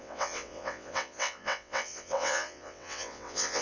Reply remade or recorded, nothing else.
remade